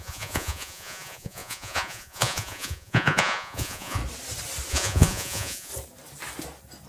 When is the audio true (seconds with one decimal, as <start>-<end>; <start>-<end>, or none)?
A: 4.0-4.7; 5.7-6.9